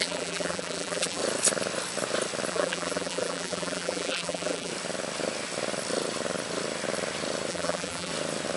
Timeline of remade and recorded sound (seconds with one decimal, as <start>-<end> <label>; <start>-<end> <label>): 0.0-1.2 remade; 1.2-2.5 recorded; 2.5-4.7 remade; 4.7-7.5 recorded; 7.5-8.1 remade; 8.1-8.6 recorded